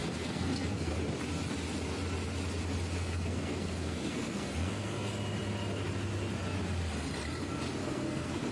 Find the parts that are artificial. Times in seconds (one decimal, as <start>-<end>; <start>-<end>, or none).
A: 0.0-0.9; 3.0-5.1; 7.8-8.5